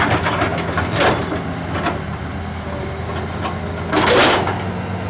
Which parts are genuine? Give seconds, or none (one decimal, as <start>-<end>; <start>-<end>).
0.0-5.1